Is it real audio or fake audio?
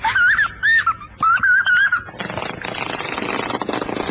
real